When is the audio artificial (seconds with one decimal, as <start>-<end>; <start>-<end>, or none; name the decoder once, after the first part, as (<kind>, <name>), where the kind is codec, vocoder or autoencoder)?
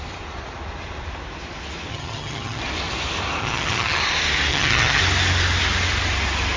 1.9-2.6 (vocoder, HiFi-GAN); 3.4-4.0; 4.5-5.0